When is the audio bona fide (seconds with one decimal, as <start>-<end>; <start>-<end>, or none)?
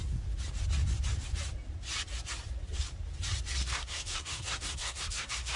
0.0-3.6